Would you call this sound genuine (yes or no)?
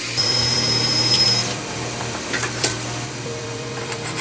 no